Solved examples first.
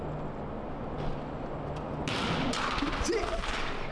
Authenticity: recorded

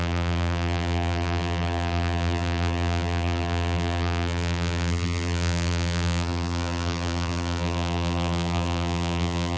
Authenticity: remade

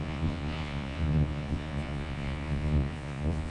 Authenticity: remade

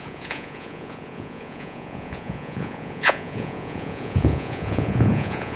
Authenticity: remade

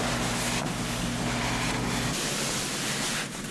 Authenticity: recorded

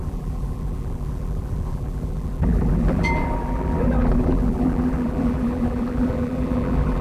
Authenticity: remade